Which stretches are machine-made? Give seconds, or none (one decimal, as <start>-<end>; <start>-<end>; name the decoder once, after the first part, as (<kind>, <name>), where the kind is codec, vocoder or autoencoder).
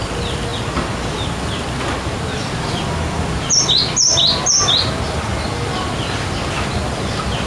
none